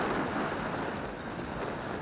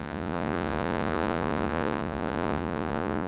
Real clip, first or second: first